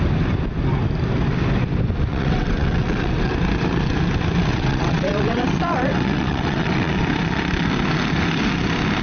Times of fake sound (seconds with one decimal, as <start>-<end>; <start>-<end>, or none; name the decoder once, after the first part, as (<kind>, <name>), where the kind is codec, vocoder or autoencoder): 2.1-3.3 (vocoder, WaveNeXt); 4.5-6.9